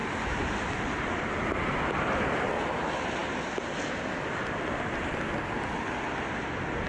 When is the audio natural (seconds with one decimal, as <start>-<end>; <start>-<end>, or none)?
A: 0.0-6.9